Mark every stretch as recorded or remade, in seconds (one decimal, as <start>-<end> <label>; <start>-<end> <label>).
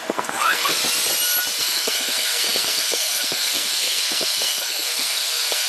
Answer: 0.0-0.8 remade; 0.8-1.6 recorded; 1.6-5.7 remade